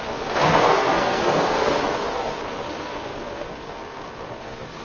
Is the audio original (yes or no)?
no